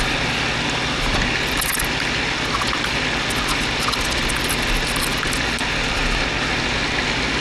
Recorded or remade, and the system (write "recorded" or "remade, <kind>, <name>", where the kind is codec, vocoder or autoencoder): recorded